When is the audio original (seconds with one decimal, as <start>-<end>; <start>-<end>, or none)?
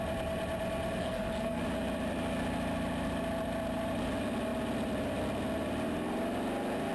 0.0-1.0; 1.6-6.9